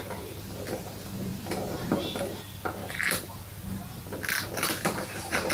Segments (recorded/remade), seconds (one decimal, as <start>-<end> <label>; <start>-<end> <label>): 0.0-5.5 recorded